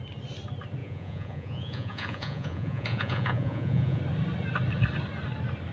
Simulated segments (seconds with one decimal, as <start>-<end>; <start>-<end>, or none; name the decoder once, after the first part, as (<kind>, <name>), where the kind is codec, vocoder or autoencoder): 0.8-4.0 (vocoder, Vocos)